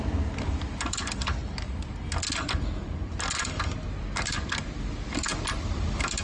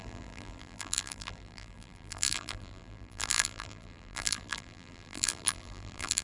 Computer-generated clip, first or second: second